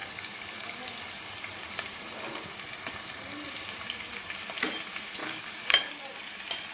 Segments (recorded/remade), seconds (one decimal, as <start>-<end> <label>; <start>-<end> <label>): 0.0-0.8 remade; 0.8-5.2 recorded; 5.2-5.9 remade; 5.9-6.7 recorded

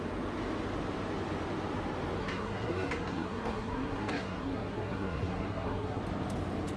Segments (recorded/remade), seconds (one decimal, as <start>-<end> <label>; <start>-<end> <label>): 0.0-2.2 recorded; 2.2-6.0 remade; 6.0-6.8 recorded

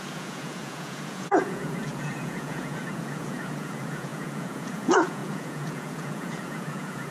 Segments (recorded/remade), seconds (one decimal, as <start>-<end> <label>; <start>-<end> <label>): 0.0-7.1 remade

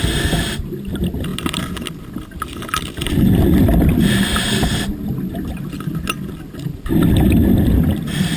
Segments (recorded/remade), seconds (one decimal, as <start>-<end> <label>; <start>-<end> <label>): 0.0-8.4 recorded

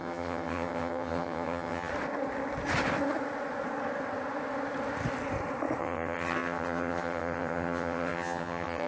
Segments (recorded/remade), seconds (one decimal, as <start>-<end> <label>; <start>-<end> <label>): 0.0-1.9 remade; 1.9-5.8 recorded; 5.8-8.9 remade

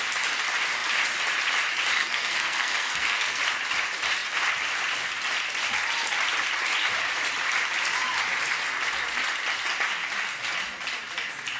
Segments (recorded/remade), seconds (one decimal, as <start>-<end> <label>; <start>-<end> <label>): 0.0-2.0 recorded; 2.0-3.4 remade; 3.4-11.6 recorded

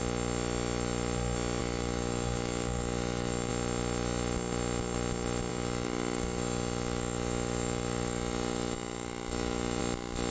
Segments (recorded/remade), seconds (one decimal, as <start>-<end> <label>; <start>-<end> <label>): 0.0-1.6 recorded; 1.6-3.5 remade; 3.5-5.5 recorded; 5.5-9.8 remade; 9.8-10.3 recorded